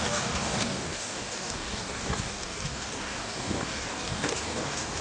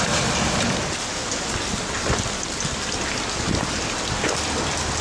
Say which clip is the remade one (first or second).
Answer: first